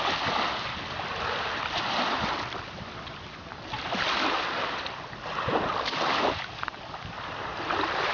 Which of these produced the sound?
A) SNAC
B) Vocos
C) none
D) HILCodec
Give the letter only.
C